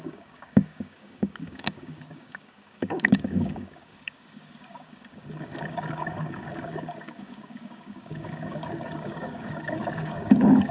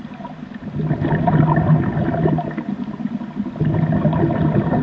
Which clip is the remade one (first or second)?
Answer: first